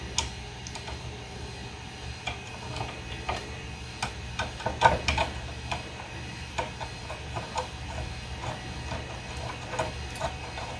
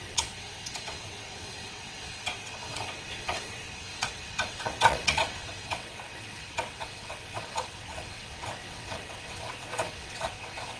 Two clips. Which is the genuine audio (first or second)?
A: first